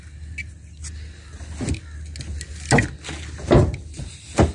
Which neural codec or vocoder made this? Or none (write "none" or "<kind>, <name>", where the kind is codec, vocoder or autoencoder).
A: none